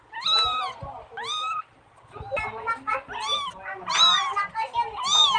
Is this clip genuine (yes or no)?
yes